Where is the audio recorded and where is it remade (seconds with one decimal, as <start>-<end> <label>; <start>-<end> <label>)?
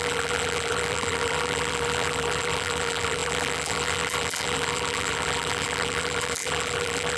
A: 0.0-7.2 remade